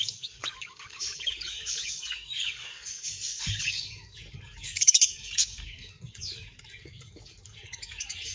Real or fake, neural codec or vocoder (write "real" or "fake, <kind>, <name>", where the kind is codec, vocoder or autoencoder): fake, codec, DAC